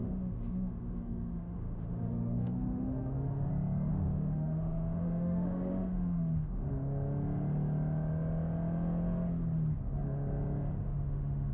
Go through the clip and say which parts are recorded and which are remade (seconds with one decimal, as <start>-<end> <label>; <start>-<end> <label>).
0.0-3.5 remade; 3.5-3.9 recorded; 3.9-6.7 remade; 6.7-10.8 recorded; 10.8-11.5 remade